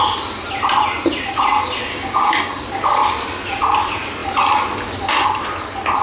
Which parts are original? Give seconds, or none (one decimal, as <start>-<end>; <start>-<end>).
0.0-1.9; 2.6-6.0